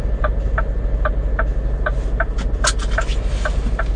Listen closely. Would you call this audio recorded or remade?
recorded